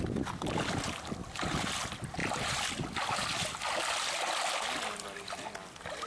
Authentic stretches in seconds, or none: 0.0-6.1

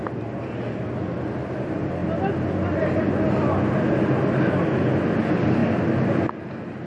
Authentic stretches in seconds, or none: 0.0-6.9

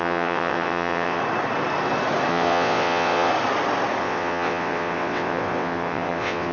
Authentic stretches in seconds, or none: 1.2-2.3; 3.3-4.0

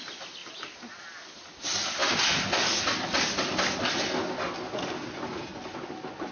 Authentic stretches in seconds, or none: 0.0-6.3

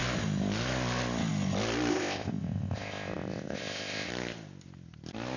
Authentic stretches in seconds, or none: 0.0-1.9; 4.1-5.4

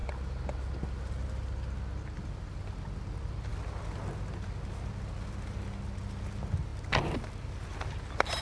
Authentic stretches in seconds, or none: 0.0-8.4